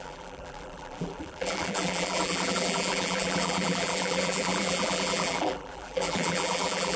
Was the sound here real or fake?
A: fake